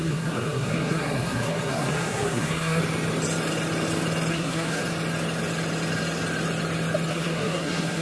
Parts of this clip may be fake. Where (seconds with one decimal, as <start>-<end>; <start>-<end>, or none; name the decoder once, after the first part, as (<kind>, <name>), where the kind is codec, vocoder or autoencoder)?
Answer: 0.0-2.8 (codec, SNAC); 4.3-4.8; 7.1-8.0

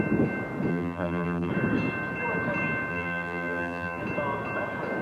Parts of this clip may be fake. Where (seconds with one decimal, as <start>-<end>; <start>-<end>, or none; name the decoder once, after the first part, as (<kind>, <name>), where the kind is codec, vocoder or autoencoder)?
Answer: 0.7-1.5 (vocoder, BigVGAN v2); 2.9-4.0